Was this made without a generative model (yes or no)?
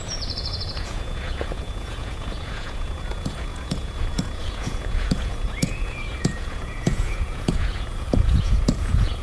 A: no